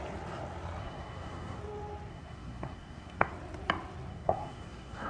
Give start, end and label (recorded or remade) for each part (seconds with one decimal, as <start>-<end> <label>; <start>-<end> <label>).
0.0-0.8 recorded; 0.8-1.6 remade; 1.6-2.1 recorded; 2.1-3.3 remade; 3.3-4.1 recorded; 4.1-5.1 remade